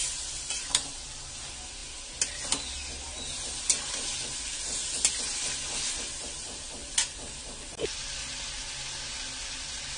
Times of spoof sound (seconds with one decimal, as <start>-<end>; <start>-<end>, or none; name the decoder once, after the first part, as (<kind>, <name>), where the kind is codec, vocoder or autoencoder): none